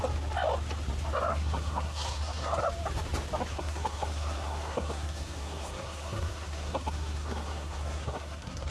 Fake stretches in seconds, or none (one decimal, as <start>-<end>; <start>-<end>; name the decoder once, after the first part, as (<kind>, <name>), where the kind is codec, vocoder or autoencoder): 1.3-2.6 (codec, SNAC); 3.5-8.7